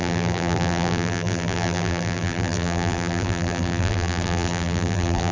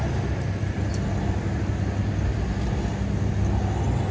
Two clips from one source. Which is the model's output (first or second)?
first